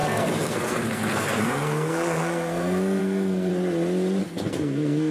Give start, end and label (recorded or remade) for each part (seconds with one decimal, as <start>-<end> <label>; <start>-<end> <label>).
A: 0.0-3.5 remade; 3.5-4.2 recorded; 4.2-5.1 remade